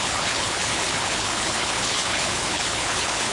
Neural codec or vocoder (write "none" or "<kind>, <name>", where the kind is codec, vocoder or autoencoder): codec, HILCodec